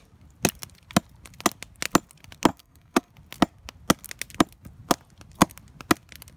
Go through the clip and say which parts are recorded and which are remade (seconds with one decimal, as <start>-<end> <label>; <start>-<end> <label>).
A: 0.0-2.5 recorded; 2.5-3.1 remade; 3.1-6.4 recorded

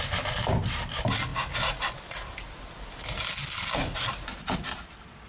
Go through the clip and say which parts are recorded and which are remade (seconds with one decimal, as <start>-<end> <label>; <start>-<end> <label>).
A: 0.0-5.3 recorded

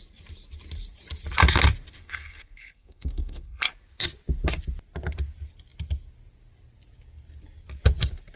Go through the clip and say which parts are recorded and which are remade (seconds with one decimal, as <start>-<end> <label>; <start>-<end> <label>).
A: 0.0-2.0 recorded; 2.0-3.7 remade; 3.7-8.4 recorded

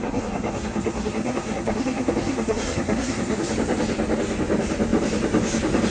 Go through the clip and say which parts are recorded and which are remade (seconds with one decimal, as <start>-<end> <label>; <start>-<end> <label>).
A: 0.0-3.5 remade; 3.5-5.9 recorded

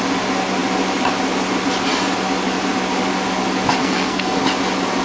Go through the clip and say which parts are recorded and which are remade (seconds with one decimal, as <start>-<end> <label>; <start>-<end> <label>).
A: 0.0-3.8 recorded; 3.8-4.4 remade; 4.4-5.0 recorded

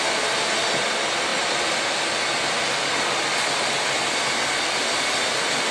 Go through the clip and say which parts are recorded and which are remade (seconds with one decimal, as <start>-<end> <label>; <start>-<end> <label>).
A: 0.0-5.7 recorded